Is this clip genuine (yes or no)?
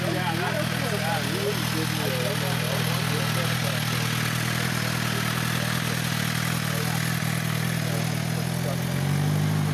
yes